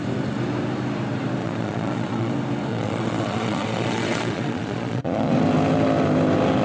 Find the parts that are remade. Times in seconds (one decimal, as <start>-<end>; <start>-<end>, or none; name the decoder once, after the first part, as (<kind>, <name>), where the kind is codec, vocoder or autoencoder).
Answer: 1.4-2.3 (vocoder, Vocos); 2.7-5.3